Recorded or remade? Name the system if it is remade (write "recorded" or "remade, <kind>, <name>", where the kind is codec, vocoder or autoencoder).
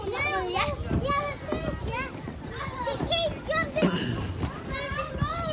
recorded